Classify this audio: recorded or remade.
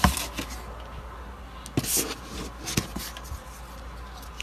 recorded